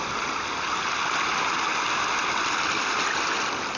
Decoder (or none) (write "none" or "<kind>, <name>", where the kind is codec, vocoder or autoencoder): none